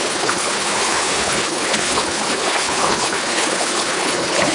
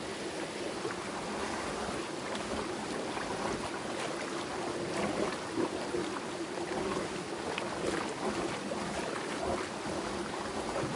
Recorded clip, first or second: second